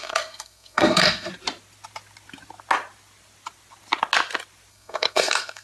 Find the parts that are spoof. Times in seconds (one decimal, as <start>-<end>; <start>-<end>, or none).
0.0-1.3; 4.7-5.6